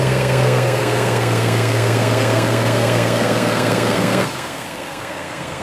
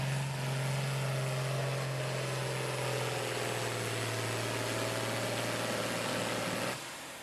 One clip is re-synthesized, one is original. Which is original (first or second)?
second